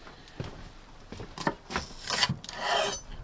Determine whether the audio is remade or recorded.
recorded